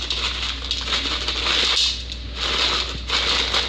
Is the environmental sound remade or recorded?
recorded